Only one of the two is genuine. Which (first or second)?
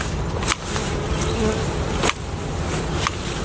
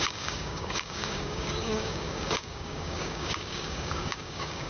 first